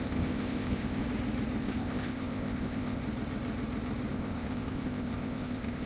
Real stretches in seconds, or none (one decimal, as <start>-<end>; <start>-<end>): 1.0-1.6; 3.0-4.1